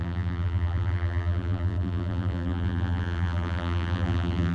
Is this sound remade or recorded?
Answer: remade